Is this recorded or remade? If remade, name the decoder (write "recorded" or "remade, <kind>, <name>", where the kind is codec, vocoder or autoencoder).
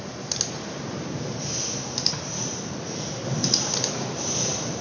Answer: remade, vocoder, BigVGAN v2